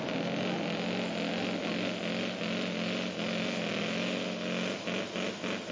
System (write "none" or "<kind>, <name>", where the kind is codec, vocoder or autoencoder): none